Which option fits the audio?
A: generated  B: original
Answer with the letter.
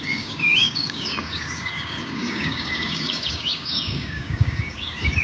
A